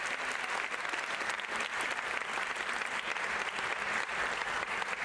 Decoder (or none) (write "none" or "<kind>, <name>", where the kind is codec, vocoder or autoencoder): none